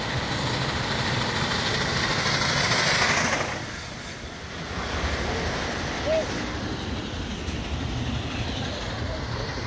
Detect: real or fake real